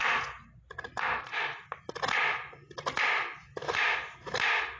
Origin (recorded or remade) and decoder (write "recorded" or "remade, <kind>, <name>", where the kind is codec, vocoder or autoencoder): recorded